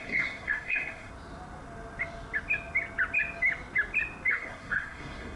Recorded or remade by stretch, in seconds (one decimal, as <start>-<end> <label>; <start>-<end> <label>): 0.0-1.1 remade; 1.1-4.3 recorded; 4.3-5.4 remade